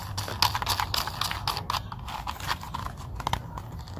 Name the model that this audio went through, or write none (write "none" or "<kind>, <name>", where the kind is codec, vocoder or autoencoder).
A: none